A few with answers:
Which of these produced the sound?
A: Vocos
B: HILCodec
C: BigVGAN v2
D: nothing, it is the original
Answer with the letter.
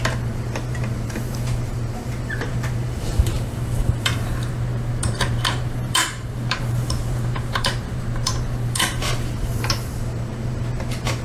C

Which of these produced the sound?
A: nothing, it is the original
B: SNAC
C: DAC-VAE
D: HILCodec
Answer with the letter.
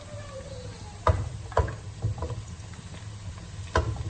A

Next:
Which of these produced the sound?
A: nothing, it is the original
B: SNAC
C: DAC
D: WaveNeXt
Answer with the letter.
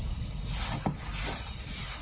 A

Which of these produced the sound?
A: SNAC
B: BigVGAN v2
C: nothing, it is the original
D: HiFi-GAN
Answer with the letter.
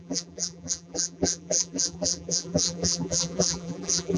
B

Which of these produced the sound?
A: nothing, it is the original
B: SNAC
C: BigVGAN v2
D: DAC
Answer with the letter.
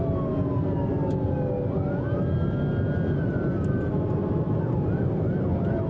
A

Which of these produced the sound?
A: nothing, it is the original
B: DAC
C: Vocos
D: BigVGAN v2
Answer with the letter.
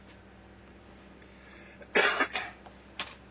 A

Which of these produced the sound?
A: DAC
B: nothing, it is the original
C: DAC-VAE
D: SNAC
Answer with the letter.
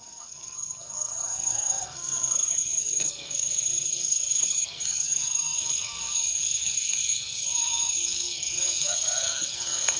D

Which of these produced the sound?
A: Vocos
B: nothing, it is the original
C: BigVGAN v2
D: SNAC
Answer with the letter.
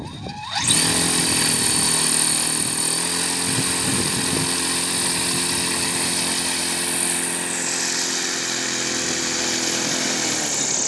B